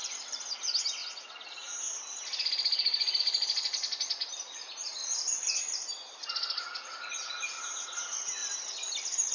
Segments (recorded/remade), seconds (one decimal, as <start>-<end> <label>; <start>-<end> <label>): 0.0-9.3 recorded